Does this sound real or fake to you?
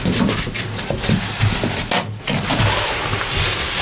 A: real